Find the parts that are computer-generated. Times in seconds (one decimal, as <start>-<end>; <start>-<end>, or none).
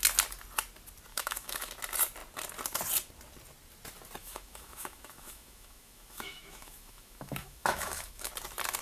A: 1.1-1.7; 4.2-8.3